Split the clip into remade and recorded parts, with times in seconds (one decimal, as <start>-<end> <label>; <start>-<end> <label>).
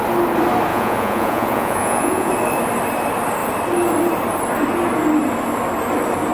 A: 0.0-0.7 recorded; 0.7-2.3 remade; 2.3-6.3 recorded